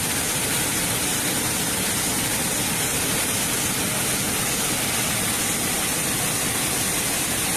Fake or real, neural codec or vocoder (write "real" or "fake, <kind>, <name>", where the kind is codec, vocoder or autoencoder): real